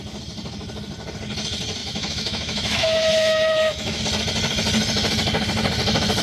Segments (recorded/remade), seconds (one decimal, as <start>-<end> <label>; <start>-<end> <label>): 0.0-1.8 recorded; 1.8-4.0 remade; 4.0-6.2 recorded